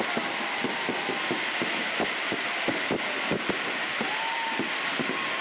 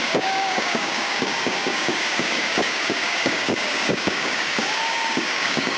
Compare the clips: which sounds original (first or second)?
first